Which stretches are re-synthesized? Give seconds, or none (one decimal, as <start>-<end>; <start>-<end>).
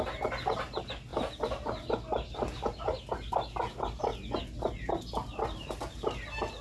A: none